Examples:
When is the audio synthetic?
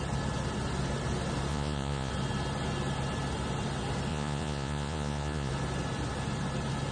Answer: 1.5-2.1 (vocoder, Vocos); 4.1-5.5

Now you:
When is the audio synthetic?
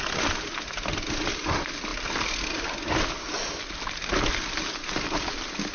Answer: none